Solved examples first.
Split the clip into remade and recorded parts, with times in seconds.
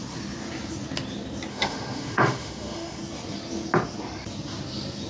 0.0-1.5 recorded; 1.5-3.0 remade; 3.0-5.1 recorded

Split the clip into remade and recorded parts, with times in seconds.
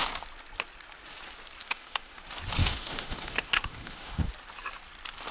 0.0-1.6 recorded; 1.6-2.2 remade; 2.2-2.6 recorded; 2.6-4.3 remade; 4.3-5.3 recorded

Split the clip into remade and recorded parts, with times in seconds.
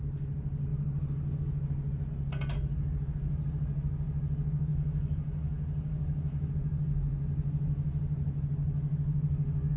0.0-4.7 recorded; 4.7-6.5 remade; 6.5-9.8 recorded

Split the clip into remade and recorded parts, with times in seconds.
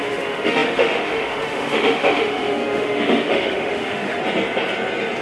0.0-4.2 remade; 4.2-5.2 recorded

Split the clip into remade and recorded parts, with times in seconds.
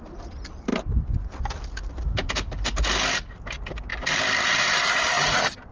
0.0-5.7 recorded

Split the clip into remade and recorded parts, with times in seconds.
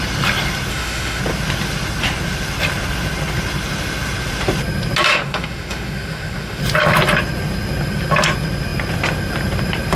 0.0-0.7 recorded; 0.7-1.2 remade; 1.2-5.1 recorded; 5.1-6.6 remade; 6.6-10.0 recorded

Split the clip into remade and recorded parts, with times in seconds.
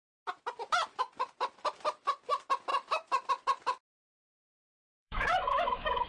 0.0-4.3 recorded; 4.3-6.1 remade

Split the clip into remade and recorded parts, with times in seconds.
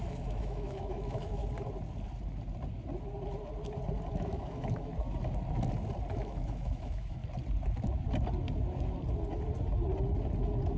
0.0-1.4 remade; 1.4-4.1 recorded; 4.1-4.9 remade; 4.9-6.1 recorded; 6.1-7.2 remade; 7.2-10.8 recorded